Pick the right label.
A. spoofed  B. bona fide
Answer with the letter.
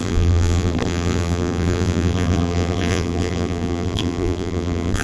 A